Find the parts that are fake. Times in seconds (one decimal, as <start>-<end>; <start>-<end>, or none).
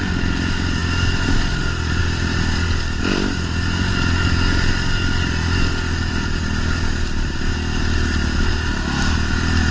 none